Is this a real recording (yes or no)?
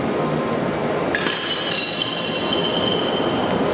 yes